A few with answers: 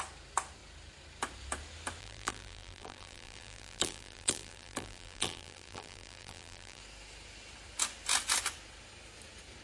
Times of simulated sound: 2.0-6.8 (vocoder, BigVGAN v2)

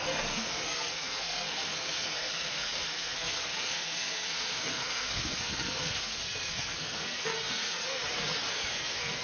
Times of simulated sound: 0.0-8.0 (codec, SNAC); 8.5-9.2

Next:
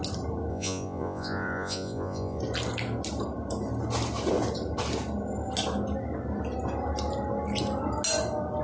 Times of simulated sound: 0.5-2.4 (vocoder, Vocos)

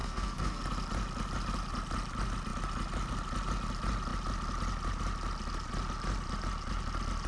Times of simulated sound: 0.0-0.6 (codec, SNAC)

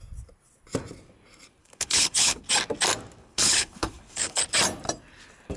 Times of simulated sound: 1.6-2.4 (codec, HILCodec); 3.2-4.4